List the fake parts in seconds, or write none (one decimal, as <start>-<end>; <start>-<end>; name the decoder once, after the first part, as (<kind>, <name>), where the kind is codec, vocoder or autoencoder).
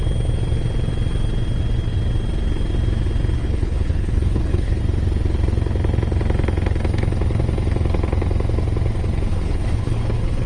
3.4-4.8 (codec, HILCodec); 9.3-10.5